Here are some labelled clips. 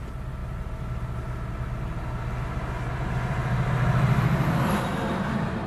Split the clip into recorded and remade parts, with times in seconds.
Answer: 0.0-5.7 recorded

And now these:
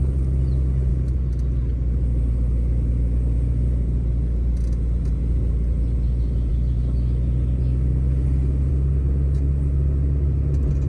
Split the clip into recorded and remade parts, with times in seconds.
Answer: 0.0-10.9 recorded

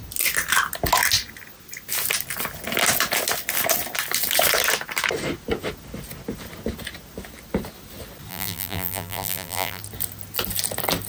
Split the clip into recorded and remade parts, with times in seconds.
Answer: 0.0-8.3 recorded; 8.3-9.8 remade; 9.8-11.1 recorded

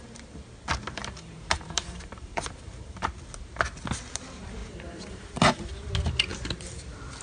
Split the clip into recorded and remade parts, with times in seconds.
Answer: 0.0-1.0 recorded; 1.0-3.1 remade; 3.1-4.6 recorded; 4.6-5.7 remade; 5.7-7.2 recorded

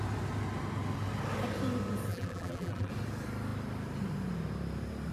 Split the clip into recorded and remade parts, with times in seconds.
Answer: 0.0-2.1 recorded; 2.1-2.9 remade; 2.9-5.1 recorded

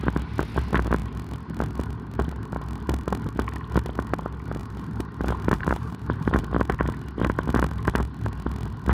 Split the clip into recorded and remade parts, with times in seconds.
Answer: 0.0-4.6 recorded; 4.6-6.4 remade; 6.4-8.9 recorded

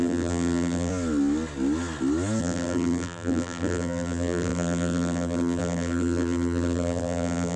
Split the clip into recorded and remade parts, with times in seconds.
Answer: 0.0-0.9 remade; 0.9-2.4 recorded; 2.4-7.6 remade

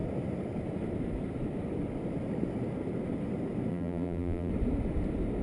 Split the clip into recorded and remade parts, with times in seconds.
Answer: 0.0-3.7 recorded; 3.7-4.5 remade; 4.5-5.4 recorded